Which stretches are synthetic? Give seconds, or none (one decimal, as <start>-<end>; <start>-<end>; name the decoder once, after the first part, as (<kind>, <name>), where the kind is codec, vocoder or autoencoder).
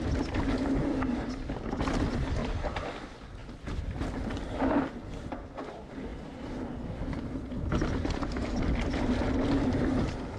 2.4-2.9 (vocoder, BigVGAN v2); 3.4-4.8; 6.1-7.0